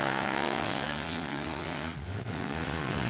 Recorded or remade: remade